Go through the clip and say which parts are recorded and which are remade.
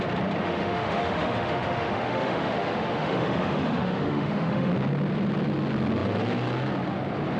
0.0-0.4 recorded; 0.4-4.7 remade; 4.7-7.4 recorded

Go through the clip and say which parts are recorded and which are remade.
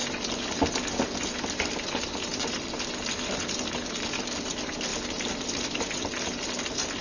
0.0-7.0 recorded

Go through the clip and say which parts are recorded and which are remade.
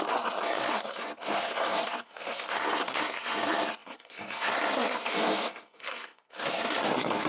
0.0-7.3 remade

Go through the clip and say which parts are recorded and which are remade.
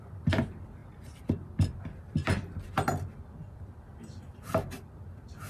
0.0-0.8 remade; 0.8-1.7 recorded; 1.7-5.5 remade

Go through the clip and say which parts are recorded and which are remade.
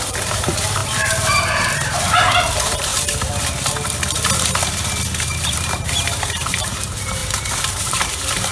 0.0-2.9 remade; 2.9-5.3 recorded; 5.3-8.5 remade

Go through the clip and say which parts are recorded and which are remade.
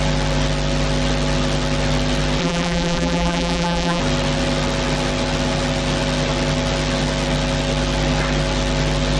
0.0-2.4 recorded; 2.4-4.0 remade; 4.0-9.2 recorded